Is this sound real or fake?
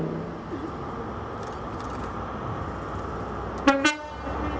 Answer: real